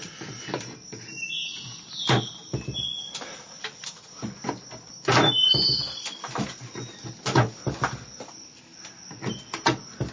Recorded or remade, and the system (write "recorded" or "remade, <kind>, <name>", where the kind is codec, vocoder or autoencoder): recorded